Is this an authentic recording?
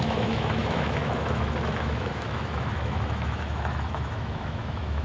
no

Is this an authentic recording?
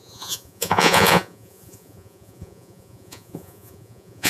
no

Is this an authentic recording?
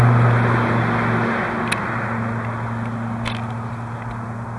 yes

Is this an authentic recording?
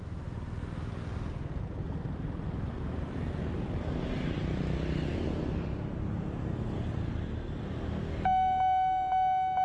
yes